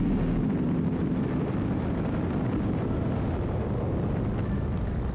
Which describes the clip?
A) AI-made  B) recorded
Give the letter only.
B